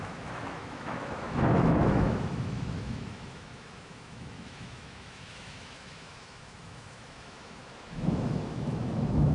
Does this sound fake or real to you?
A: fake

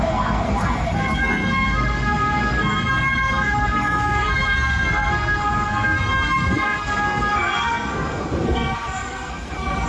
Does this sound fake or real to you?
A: fake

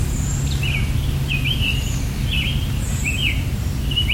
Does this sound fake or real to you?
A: real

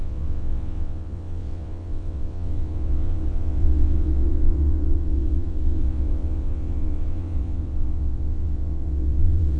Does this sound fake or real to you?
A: fake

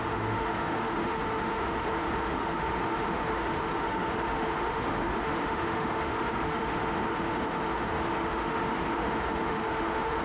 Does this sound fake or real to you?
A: fake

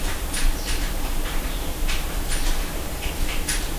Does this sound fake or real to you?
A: fake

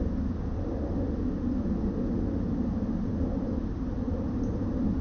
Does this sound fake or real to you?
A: real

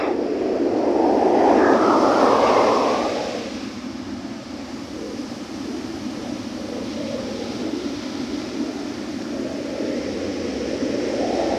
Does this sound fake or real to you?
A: real